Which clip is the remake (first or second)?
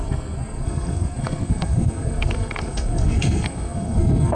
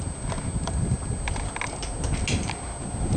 first